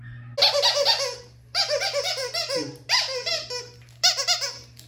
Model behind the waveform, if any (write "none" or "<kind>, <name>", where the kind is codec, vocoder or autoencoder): none